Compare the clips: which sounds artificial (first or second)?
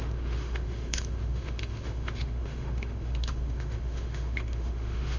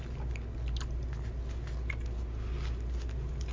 first